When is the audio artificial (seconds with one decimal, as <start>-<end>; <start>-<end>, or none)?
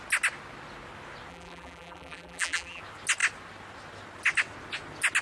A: 1.3-2.8